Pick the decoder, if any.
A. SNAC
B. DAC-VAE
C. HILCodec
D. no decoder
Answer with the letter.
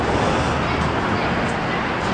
D